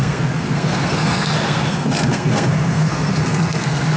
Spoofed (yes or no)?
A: yes